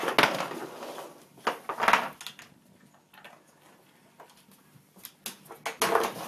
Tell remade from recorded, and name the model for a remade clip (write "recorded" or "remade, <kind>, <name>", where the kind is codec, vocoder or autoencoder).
recorded